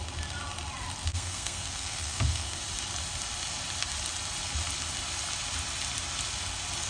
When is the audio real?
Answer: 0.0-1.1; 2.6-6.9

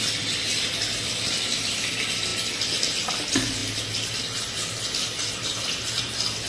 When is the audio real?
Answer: 0.0-6.5

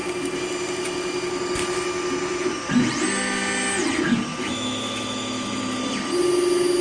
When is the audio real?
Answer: 0.0-4.3; 5.8-6.8

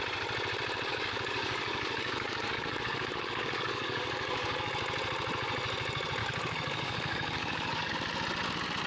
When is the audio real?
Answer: 0.0-0.9; 4.7-6.2; 7.9-8.9

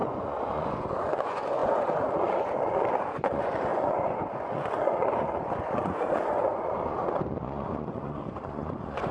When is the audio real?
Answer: none

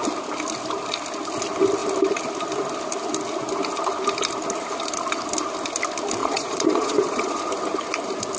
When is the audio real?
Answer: 0.0-6.2; 7.4-8.4

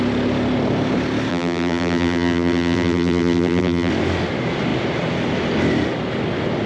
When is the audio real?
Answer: 0.0-1.3; 3.9-6.7